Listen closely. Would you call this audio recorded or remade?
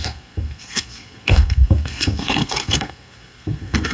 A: remade